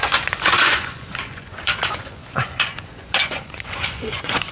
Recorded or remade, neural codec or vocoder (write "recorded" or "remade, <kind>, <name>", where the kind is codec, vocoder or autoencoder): remade, vocoder, Vocos